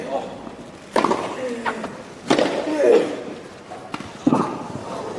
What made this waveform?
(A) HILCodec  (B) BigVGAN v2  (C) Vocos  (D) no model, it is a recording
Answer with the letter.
D